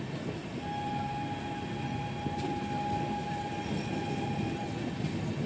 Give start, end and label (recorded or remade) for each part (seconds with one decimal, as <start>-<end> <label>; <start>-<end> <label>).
0.0-5.5 recorded